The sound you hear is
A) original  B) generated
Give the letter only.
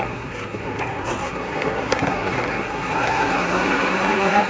B